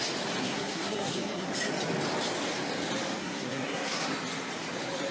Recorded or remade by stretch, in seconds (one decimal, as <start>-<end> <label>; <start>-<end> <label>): 0.0-0.4 recorded; 0.4-1.5 remade; 1.5-3.2 recorded; 3.2-4.1 remade; 4.1-5.1 recorded